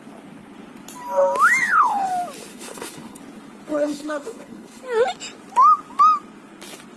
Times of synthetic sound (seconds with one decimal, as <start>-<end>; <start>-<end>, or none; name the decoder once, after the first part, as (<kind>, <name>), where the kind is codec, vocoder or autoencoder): 1.6-2.1 (codec, HILCodec); 2.5-3.2; 3.7-4.8

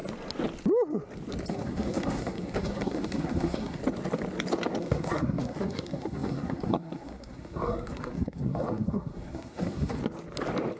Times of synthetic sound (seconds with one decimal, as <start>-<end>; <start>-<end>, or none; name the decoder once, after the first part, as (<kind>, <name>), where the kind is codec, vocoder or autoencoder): 1.5-3.8 (codec, SNAC); 4.8-10.0

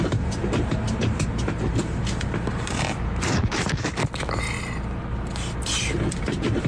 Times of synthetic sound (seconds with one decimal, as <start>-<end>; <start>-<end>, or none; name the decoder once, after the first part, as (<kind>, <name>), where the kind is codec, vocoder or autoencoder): 0.0-3.9 (vocoder, BigVGAN v2); 6.1-6.7

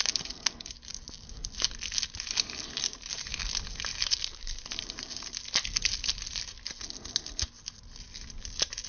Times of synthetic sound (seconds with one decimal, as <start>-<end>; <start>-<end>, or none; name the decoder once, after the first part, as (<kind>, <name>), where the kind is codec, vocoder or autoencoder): 3.9-5.3 (vocoder, BigVGAN v2)

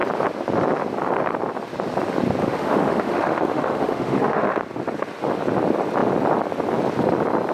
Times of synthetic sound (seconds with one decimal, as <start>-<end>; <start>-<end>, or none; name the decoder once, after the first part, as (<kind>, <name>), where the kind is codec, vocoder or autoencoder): 2.4-4.6 (autoencoder, DAC-VAE)

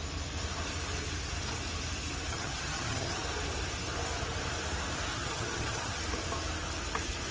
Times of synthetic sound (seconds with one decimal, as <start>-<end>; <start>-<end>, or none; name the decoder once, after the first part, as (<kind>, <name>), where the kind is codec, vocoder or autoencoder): 2.3-3.2 (vocoder, HiFi-GAN); 5.1-6.0